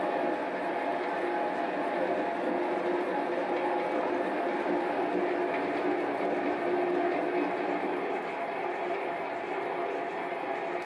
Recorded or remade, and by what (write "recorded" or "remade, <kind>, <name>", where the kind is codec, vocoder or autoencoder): recorded